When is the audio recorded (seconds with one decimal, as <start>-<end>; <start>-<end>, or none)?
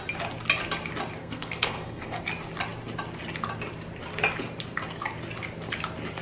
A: 0.0-1.2; 2.2-6.2